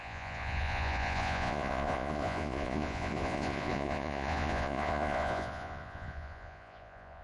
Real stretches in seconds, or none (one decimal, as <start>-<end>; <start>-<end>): none